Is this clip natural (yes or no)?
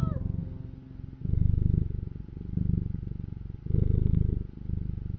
yes